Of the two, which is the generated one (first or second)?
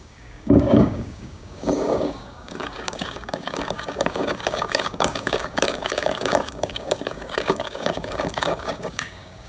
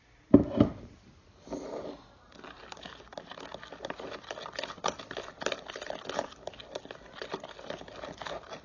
first